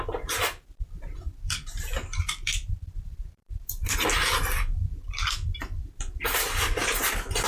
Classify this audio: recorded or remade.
remade